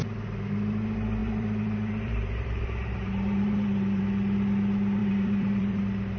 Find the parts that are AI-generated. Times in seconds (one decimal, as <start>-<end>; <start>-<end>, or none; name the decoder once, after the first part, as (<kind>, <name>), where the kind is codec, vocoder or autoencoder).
1.2-4.0 (vocoder, BigVGAN v2); 5.0-5.8